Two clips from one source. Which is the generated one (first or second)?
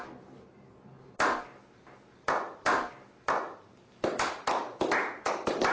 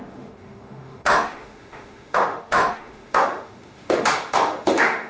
second